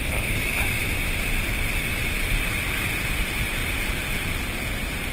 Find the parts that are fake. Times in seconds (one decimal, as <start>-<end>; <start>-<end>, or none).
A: 0.0-3.6; 4.2-5.1